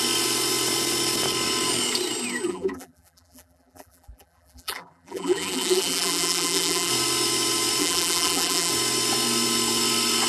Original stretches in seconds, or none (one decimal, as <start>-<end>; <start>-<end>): 0.0-2.5; 6.9-7.8; 8.7-10.3